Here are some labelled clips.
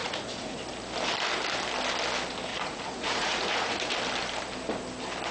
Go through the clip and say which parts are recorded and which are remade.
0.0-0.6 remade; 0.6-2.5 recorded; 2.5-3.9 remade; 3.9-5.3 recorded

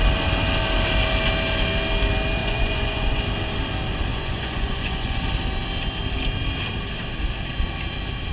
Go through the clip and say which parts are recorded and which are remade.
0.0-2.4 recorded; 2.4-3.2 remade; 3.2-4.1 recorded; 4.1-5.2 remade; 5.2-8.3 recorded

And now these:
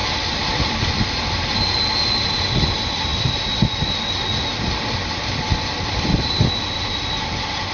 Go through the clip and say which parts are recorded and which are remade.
0.0-7.7 recorded

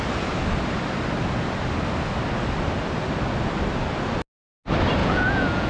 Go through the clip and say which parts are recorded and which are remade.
0.0-5.0 recorded; 5.0-5.7 remade

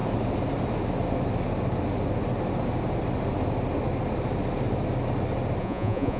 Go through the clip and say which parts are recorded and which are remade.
0.0-5.6 recorded; 5.6-6.2 remade

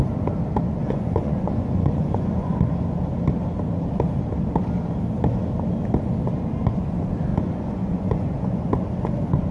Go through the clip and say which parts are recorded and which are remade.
0.0-0.8 recorded; 0.8-2.6 remade; 2.6-7.3 recorded; 7.3-8.7 remade; 8.7-9.5 recorded